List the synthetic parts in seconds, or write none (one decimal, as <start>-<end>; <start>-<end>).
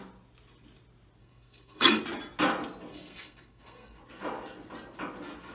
1.2-2.0; 2.9-4.0